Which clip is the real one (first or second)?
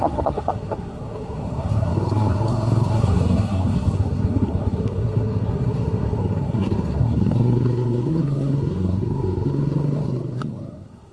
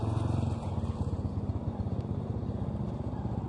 second